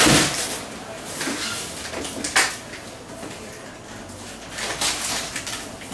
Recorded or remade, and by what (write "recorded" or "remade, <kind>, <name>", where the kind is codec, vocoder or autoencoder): recorded